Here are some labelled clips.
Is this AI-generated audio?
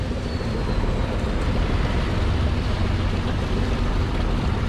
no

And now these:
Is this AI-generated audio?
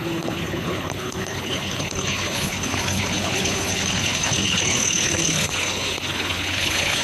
yes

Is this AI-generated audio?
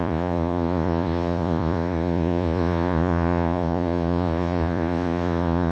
yes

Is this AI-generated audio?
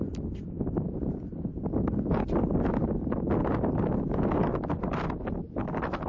no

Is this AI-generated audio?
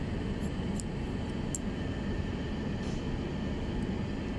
no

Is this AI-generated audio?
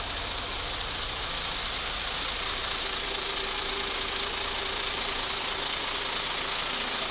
no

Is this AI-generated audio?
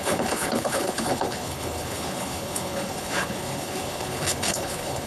yes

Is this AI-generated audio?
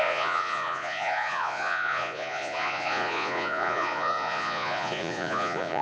yes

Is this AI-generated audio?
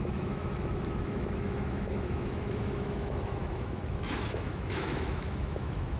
yes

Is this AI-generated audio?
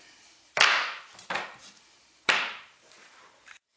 yes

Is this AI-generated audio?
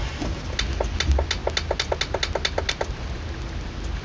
no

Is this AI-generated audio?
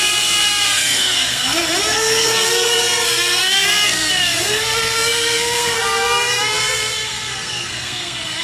yes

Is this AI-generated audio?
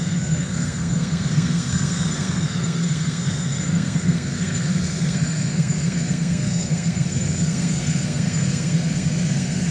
yes